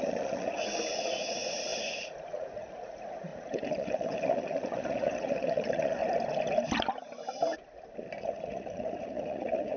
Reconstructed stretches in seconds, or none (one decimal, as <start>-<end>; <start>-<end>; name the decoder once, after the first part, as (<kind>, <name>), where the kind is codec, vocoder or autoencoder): 0.0-6.0 (vocoder, Vocos); 8.2-9.8